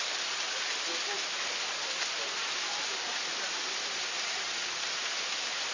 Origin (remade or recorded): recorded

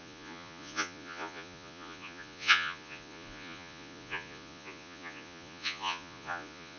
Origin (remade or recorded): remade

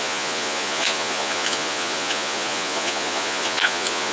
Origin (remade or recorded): remade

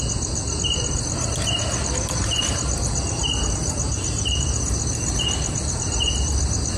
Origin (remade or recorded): remade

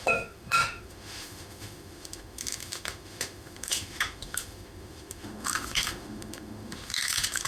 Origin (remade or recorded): remade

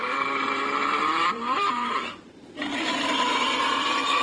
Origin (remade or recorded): remade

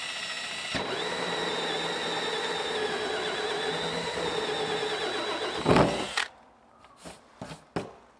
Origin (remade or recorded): recorded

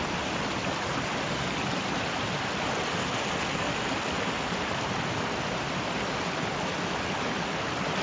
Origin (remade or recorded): recorded